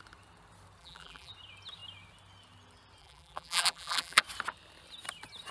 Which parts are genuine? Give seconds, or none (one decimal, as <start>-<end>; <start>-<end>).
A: 0.0-0.8; 1.3-3.0; 4.2-5.5